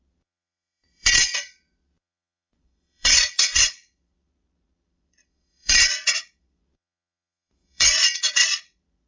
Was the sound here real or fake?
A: fake